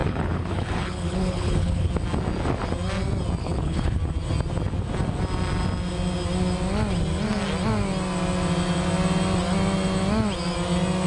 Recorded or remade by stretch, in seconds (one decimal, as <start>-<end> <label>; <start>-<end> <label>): 0.0-1.9 remade; 1.9-3.4 recorded; 3.4-4.0 remade; 4.0-11.1 recorded